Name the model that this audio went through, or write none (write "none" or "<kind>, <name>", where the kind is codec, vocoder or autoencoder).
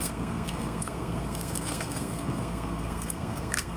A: codec, SNAC